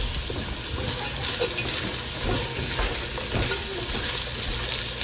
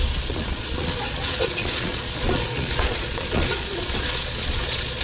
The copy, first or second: second